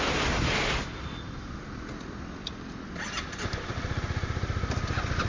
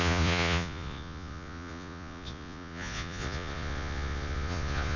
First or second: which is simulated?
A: second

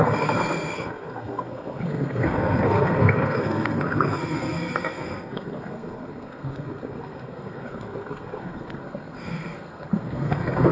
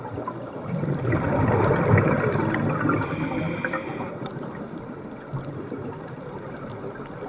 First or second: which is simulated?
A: first